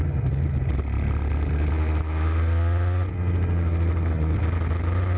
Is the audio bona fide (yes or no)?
yes